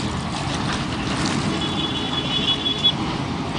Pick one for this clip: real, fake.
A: real